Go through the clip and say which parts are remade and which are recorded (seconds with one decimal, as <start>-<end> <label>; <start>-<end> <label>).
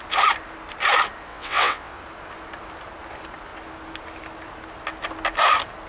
0.0-1.3 recorded; 1.3-2.0 remade; 2.0-5.9 recorded